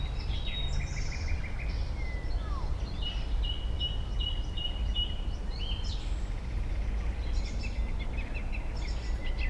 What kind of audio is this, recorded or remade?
recorded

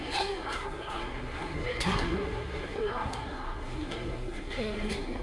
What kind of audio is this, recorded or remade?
remade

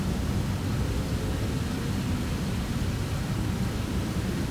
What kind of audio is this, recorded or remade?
recorded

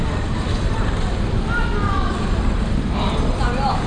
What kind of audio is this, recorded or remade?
recorded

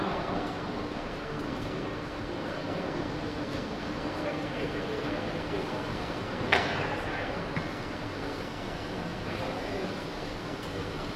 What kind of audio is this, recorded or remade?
remade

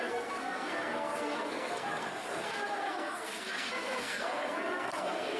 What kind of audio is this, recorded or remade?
remade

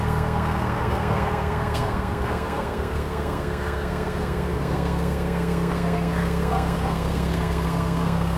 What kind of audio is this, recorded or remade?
remade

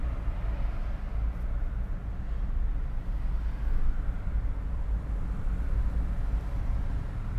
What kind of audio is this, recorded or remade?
recorded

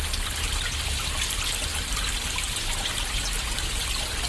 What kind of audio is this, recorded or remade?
recorded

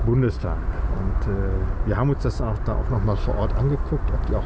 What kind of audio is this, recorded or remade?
recorded